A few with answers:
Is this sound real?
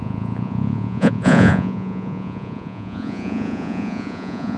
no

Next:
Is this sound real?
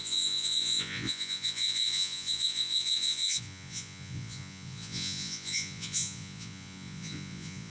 no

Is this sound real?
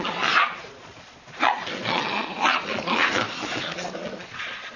no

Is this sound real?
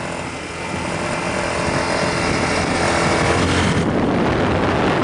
yes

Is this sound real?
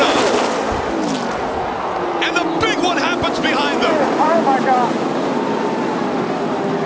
yes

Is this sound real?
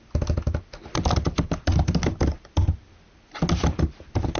yes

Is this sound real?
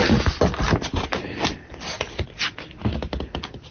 yes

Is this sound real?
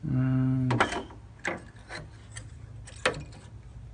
yes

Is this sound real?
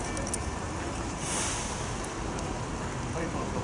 yes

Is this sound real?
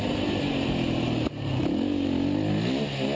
yes